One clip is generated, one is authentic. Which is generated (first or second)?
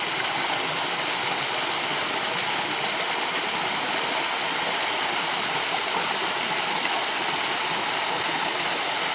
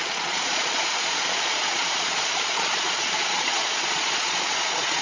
second